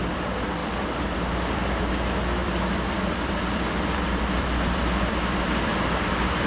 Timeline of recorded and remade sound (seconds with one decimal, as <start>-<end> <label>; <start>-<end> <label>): 0.0-0.6 recorded; 0.6-1.8 remade; 1.8-2.4 recorded; 2.4-6.5 remade